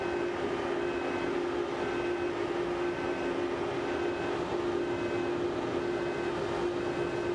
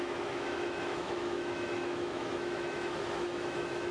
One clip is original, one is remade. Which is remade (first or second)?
second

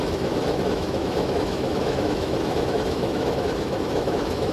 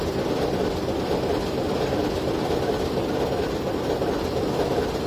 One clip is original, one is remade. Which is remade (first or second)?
first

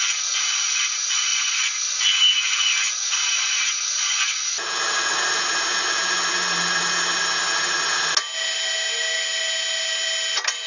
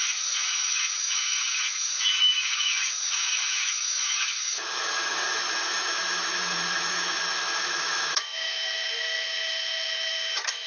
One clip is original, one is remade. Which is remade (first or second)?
second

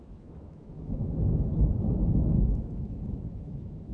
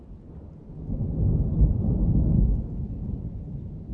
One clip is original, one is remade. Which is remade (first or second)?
first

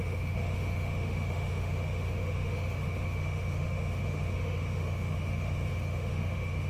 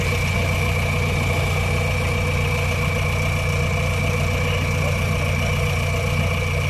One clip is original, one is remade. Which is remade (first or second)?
first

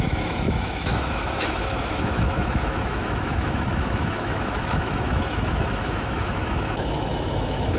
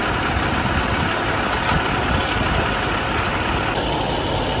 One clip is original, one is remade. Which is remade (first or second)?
first